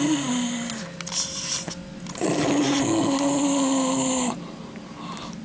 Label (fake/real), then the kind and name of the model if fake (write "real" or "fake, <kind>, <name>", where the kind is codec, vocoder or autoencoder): real